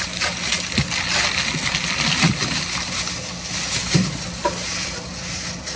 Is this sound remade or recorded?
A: recorded